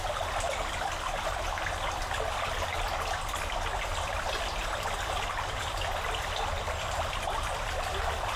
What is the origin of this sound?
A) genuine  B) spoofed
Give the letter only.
A